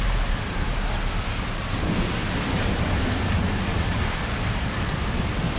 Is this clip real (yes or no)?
yes